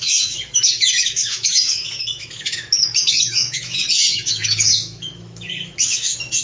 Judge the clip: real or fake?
fake